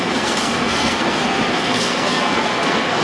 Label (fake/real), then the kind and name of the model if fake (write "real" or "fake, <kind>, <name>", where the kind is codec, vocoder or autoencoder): fake, codec, SNAC